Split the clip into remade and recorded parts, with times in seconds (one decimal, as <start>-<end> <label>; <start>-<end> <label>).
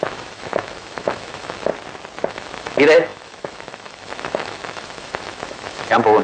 0.0-1.7 remade; 1.7-2.3 recorded; 2.3-6.2 remade